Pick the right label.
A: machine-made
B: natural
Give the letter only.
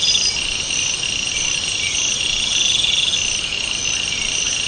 B